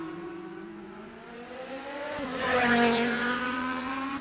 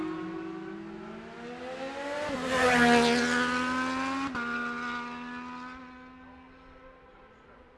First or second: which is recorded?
second